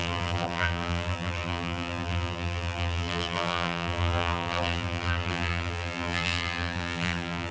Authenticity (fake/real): fake